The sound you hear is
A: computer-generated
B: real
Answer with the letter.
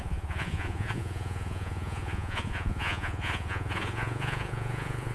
A